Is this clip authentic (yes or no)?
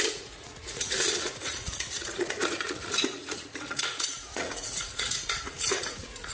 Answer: no